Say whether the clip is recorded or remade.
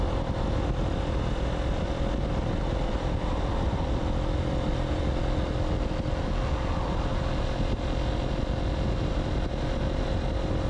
recorded